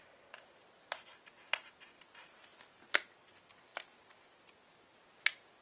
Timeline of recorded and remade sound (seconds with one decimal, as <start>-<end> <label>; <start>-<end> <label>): 0.0-5.6 recorded